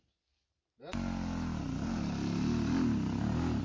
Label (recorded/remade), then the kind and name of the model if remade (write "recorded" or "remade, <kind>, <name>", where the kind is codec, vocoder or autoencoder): recorded